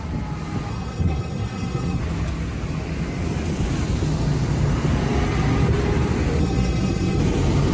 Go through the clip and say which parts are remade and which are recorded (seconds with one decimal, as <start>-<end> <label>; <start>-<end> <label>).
0.0-0.7 recorded; 0.7-2.0 remade; 2.0-6.4 recorded; 6.4-7.2 remade; 7.2-7.7 recorded